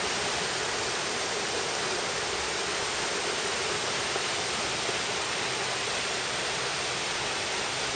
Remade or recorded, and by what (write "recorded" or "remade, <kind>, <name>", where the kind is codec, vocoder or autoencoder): recorded